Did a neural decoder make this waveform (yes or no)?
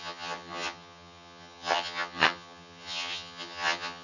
yes